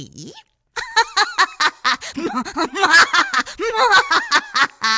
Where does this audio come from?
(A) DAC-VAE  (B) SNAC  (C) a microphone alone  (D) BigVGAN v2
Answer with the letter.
C